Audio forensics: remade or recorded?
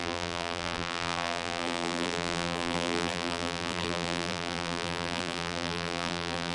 remade